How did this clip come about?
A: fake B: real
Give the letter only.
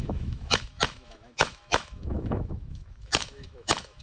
A